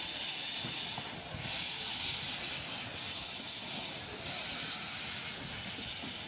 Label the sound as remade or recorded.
recorded